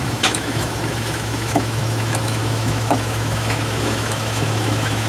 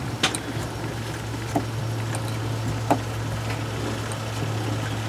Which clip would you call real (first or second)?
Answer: second